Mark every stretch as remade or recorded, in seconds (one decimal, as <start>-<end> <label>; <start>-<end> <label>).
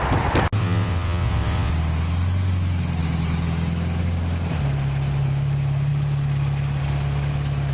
0.0-0.6 recorded; 0.6-1.7 remade; 1.7-7.7 recorded